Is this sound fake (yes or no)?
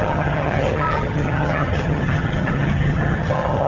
yes